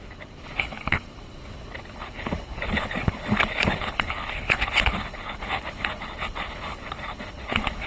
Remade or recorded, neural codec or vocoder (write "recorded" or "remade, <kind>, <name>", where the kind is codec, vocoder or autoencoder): remade, codec, HILCodec